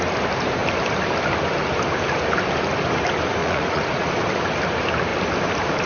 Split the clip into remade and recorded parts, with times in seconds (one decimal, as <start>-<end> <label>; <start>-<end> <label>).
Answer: 0.0-3.4 recorded; 3.4-4.1 remade; 4.1-5.9 recorded